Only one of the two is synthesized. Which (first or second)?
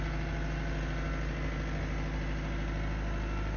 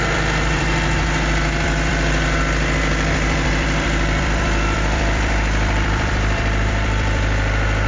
second